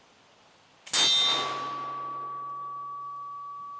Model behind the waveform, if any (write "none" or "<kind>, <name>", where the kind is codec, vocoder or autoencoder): none